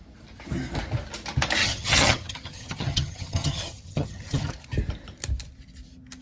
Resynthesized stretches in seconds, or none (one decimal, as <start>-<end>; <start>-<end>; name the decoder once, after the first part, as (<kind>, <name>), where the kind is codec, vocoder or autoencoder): 1.6-4.5 (vocoder, HiFi-GAN)

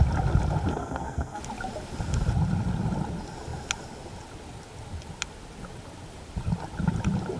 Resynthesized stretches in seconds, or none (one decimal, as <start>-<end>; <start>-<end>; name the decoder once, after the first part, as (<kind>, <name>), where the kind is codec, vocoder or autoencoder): 0.7-1.4 (codec, SNAC)

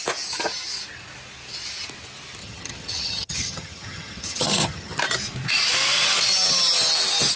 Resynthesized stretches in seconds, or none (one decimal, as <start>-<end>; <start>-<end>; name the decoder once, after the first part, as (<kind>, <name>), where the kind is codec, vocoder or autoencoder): 2.4-5.0 (vocoder, HiFi-GAN)

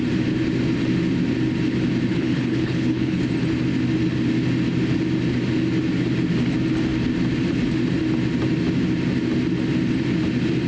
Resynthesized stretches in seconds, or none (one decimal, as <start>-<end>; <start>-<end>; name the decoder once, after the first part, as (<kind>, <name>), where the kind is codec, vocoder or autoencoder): 2.1-3.2 (codec, HILCodec)

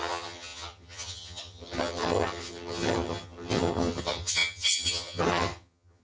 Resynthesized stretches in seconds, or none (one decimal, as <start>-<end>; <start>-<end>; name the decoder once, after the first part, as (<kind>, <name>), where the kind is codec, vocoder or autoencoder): 0.0-6.0 (vocoder, HiFi-GAN)

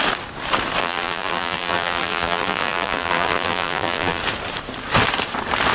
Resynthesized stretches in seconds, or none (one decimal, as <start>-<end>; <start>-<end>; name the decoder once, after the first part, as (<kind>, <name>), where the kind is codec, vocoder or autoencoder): 0.8-4.2 (vocoder, BigVGAN v2)